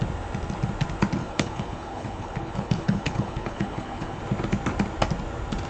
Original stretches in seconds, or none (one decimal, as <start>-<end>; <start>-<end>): 0.0-1.2; 4.2-5.7